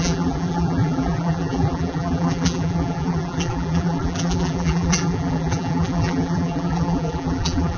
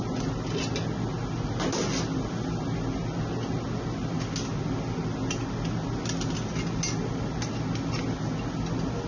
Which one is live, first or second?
second